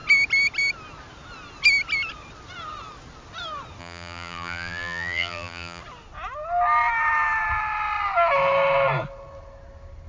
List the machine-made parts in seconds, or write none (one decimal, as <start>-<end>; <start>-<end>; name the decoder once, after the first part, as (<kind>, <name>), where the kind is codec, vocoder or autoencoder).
3.8-5.8 (vocoder, BigVGAN v2)